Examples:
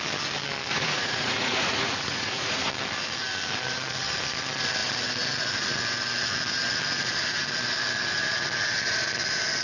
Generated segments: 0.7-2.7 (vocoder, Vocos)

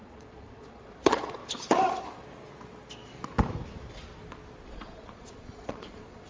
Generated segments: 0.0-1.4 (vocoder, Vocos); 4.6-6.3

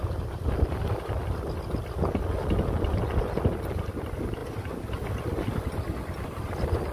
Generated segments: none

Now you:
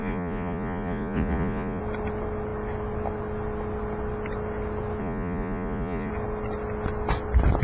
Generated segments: 0.0-1.8 (vocoder, Vocos); 5.0-6.1

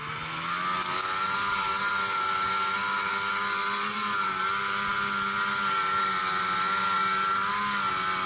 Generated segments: none